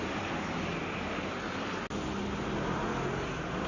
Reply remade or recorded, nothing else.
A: recorded